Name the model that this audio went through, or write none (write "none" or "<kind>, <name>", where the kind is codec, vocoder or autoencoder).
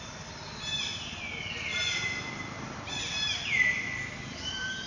none